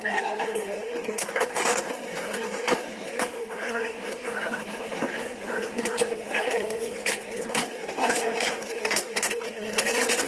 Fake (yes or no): yes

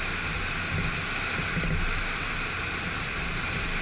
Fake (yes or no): no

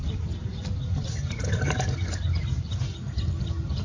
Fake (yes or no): yes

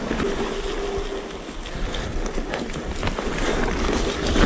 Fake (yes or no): no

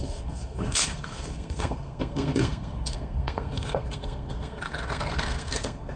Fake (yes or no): yes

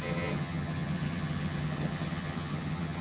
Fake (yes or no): yes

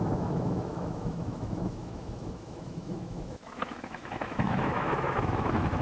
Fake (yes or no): yes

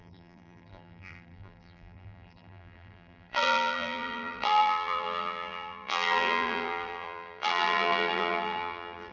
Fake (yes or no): yes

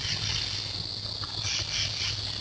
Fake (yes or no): no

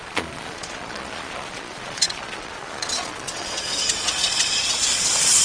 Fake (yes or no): yes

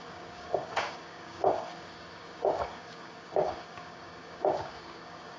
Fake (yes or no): yes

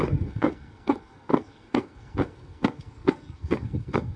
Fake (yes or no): yes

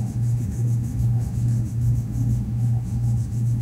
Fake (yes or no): yes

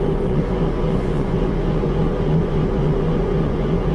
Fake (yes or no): yes